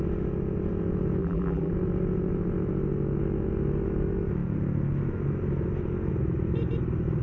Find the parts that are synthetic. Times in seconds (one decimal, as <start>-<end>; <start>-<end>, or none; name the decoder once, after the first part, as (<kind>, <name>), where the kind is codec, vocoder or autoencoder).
1.2-1.7 (vocoder, BigVGAN v2)